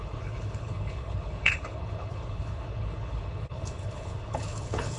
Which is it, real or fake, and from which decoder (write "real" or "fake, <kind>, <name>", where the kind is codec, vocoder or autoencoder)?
fake, codec, HILCodec